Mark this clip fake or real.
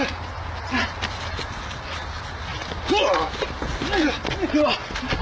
real